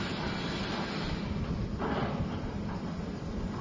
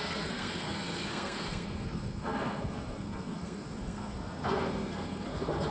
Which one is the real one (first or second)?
first